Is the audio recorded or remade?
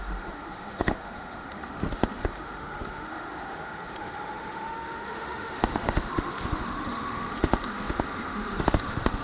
remade